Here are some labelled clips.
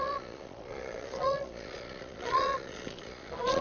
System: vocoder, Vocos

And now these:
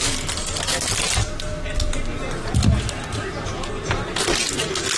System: none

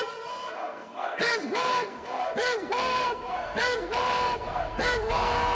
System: codec, SNAC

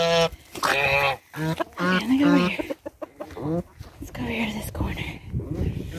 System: none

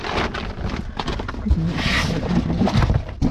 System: none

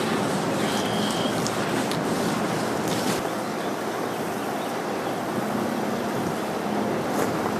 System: none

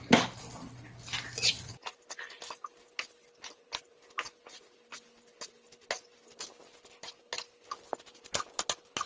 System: none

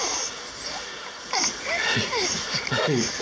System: none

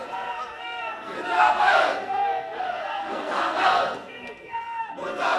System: codec, SNAC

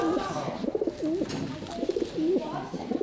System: none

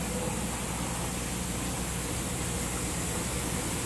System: none